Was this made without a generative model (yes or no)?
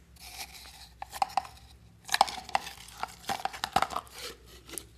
yes